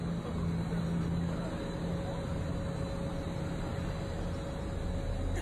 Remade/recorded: recorded